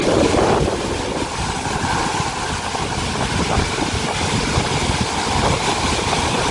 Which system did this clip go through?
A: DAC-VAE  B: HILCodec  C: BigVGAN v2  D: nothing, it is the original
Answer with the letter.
D